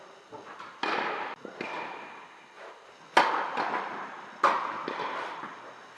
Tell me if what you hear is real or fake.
real